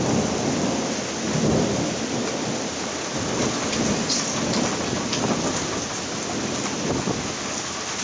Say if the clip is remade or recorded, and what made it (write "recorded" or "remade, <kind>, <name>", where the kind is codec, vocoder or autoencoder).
recorded